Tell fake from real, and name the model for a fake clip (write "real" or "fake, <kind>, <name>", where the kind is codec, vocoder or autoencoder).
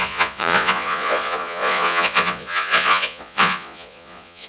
fake, vocoder, Vocos